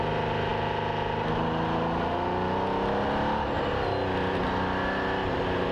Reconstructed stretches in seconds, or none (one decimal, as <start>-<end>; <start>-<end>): none